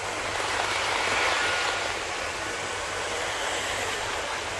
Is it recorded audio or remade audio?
recorded